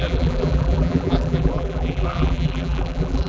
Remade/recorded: remade